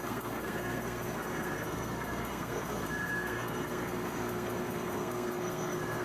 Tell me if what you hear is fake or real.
fake